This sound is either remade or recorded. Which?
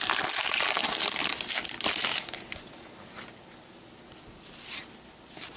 recorded